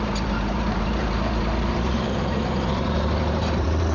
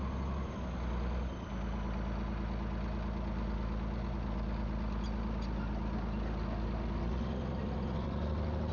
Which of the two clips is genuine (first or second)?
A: second